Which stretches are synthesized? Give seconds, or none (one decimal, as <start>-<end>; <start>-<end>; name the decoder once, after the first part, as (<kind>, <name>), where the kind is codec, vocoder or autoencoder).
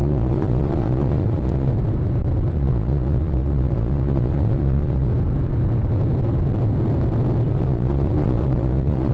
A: 0.0-1.7 (vocoder, Vocos); 2.5-5.1; 7.5-9.1